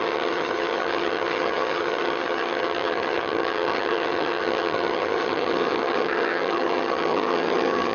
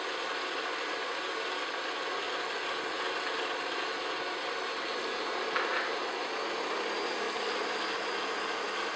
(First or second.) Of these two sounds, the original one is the second